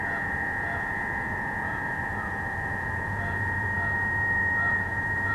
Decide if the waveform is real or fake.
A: fake